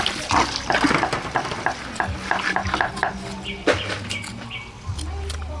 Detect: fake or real real